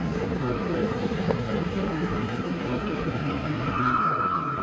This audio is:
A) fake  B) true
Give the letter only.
A